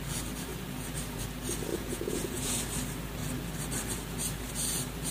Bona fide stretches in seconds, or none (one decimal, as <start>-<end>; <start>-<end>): 0.0-1.7; 2.6-5.1